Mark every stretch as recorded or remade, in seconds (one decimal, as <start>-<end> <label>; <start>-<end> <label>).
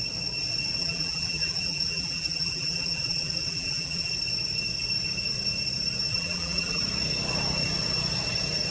0.0-0.8 recorded; 0.8-4.1 remade; 4.1-6.1 recorded; 6.1-6.8 remade; 6.8-8.7 recorded